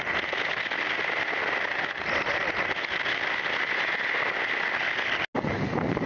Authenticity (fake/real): real